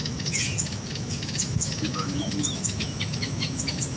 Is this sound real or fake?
fake